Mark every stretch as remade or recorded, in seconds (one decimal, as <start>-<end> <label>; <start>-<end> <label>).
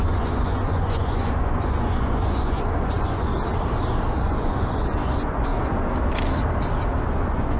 0.0-3.3 remade; 3.3-4.2 recorded; 4.2-5.5 remade; 5.5-7.0 recorded; 7.0-7.6 remade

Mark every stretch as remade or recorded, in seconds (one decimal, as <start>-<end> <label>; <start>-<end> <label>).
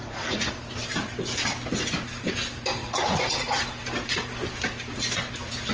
0.0-0.5 remade; 0.5-2.8 recorded; 2.8-3.6 remade; 3.6-5.7 recorded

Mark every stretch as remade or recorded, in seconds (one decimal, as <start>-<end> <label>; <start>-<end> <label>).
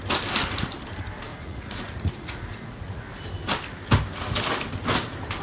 0.0-1.3 recorded; 1.3-3.0 remade; 3.0-5.4 recorded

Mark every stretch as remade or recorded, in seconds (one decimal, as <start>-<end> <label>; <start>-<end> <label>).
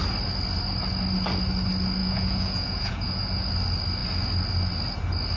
0.0-2.0 recorded; 2.0-3.5 remade; 3.5-5.4 recorded